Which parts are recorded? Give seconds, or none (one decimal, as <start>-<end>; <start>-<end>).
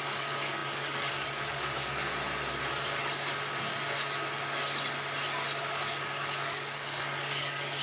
2.1-5.6